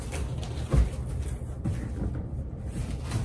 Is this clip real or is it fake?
real